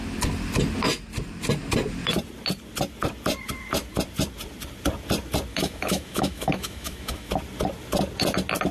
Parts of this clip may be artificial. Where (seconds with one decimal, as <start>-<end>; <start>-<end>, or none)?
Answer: 5.5-7.3